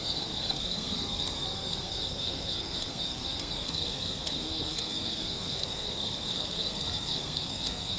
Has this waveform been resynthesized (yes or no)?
yes